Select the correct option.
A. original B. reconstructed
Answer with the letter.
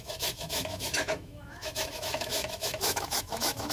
B